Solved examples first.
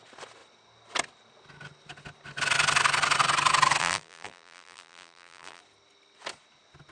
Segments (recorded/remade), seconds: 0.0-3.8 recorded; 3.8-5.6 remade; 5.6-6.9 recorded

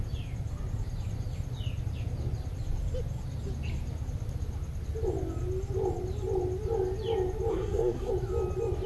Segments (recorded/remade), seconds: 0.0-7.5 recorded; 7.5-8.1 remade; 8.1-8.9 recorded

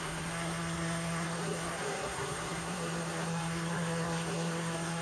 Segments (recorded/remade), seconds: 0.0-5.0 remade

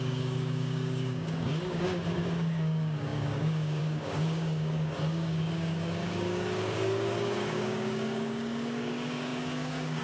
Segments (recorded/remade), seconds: 0.0-10.0 remade

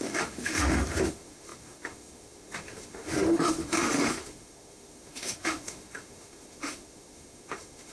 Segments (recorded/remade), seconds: 0.0-7.9 remade

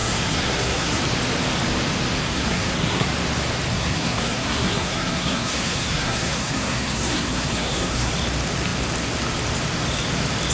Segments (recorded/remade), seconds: 0.0-1.0 remade; 1.0-2.2 recorded; 2.2-3.1 remade; 3.1-3.7 recorded; 3.7-8.1 remade; 8.1-10.5 recorded

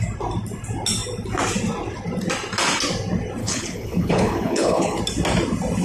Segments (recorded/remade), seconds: 0.0-3.4 recorded; 3.4-5.0 remade; 5.0-5.8 recorded